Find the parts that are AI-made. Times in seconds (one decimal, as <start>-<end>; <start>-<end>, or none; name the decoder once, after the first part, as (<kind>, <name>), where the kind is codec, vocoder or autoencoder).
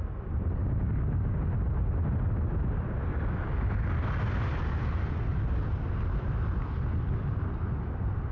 none